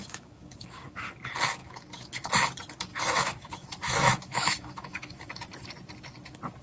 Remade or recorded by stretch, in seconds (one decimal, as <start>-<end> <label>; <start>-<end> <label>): 0.0-1.2 remade; 1.2-1.6 recorded; 1.6-2.3 remade; 2.3-2.9 recorded; 2.9-5.4 remade; 5.4-6.6 recorded